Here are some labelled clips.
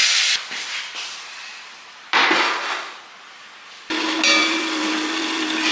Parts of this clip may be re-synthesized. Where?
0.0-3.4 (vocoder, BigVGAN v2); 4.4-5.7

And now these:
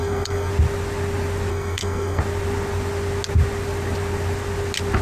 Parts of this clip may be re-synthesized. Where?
0.0-0.5 (codec, SNAC); 1.5-2.2